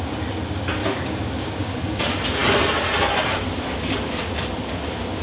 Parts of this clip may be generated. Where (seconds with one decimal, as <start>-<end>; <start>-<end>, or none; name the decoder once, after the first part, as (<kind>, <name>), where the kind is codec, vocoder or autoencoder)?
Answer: 0.8-2.0 (codec, DAC)